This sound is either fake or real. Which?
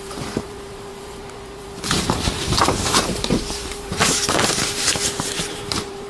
fake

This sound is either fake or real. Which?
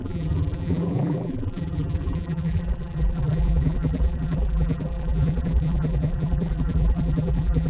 fake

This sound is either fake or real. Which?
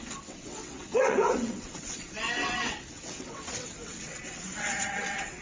fake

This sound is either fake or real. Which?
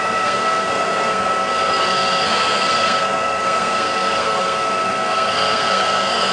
fake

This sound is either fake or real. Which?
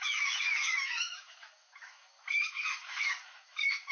fake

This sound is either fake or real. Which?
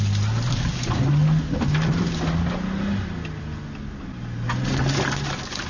real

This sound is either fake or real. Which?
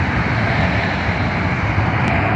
real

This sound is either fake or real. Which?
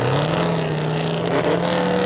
real